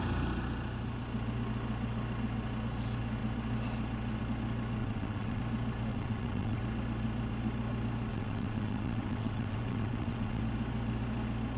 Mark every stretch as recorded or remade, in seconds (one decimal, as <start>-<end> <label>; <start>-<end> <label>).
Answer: 0.0-4.8 recorded; 4.8-5.4 remade; 5.4-5.9 recorded; 5.9-6.6 remade; 6.6-8.1 recorded; 8.1-10.4 remade; 10.4-11.6 recorded